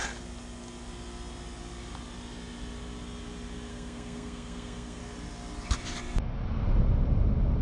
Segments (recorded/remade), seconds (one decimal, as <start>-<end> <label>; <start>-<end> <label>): 0.0-3.7 recorded; 3.7-5.0 remade; 5.0-7.6 recorded

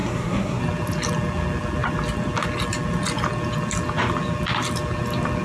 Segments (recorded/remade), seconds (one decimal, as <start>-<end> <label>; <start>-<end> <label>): 0.0-0.6 remade; 0.6-5.4 recorded

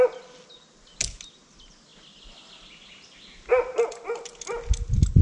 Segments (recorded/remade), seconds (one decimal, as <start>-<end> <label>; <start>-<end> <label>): 0.0-5.2 recorded

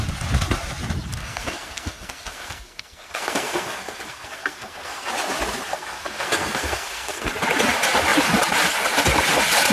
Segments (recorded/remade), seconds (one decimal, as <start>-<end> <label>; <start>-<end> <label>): 0.0-1.2 recorded; 1.2-5.1 remade; 5.1-5.7 recorded; 5.7-7.3 remade; 7.3-9.7 recorded